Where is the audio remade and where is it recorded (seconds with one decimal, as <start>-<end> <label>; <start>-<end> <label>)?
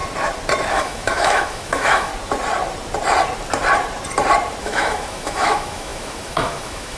0.0-0.7 recorded; 0.7-2.1 remade; 2.1-4.6 recorded; 4.6-7.0 remade